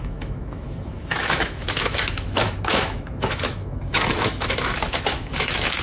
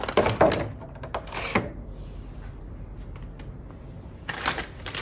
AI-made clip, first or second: first